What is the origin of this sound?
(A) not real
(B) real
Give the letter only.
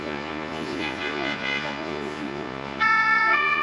A